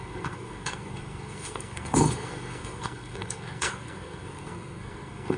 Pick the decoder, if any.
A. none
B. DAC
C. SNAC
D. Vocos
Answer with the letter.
C